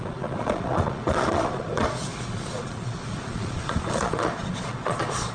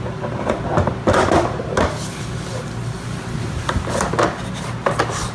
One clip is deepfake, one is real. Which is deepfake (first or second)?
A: first